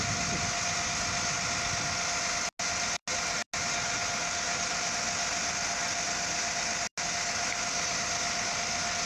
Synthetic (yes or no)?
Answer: no